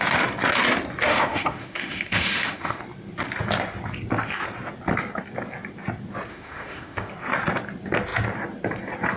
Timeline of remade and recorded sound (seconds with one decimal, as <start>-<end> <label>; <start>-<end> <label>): 0.0-1.1 recorded; 1.1-2.8 remade; 2.8-6.3 recorded; 6.3-7.1 remade; 7.1-9.2 recorded